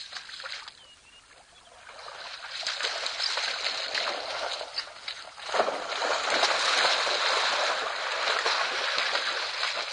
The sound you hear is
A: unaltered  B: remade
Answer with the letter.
A